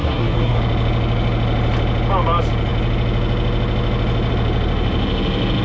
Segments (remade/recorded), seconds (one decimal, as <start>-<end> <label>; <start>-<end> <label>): 0.0-0.6 remade; 0.6-5.6 recorded